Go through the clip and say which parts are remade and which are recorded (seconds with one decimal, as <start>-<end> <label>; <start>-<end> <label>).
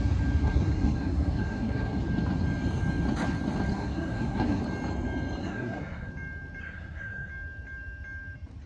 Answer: 0.0-0.4 recorded; 0.4-2.0 remade; 2.0-3.7 recorded; 3.7-4.6 remade; 4.6-5.4 recorded; 5.4-6.1 remade; 6.1-6.6 recorded; 6.6-7.3 remade; 7.3-8.7 recorded